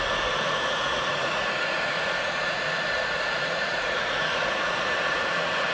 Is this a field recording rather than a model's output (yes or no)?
no